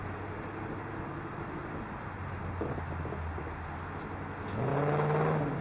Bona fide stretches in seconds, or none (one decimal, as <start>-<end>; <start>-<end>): 0.0-5.6